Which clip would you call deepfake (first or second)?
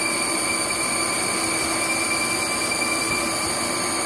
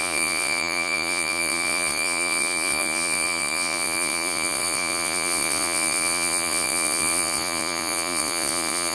second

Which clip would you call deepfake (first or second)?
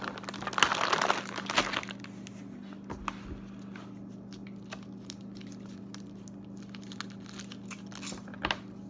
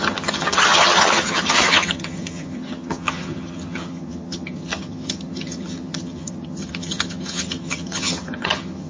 second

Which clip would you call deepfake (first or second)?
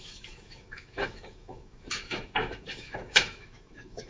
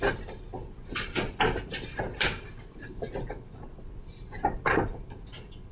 first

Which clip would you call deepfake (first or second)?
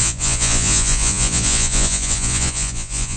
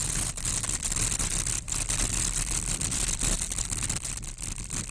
first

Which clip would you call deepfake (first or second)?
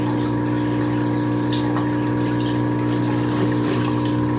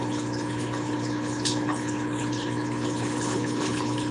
second